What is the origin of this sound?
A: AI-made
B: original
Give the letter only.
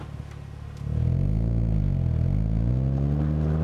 B